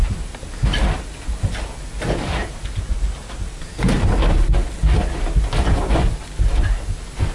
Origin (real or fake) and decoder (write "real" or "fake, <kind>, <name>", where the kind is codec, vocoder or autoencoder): real